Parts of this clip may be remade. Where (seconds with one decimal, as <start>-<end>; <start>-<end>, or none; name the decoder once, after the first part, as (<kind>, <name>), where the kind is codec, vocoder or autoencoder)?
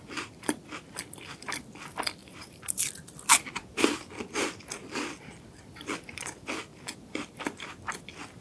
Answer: 2.2-3.0 (vocoder, BigVGAN v2)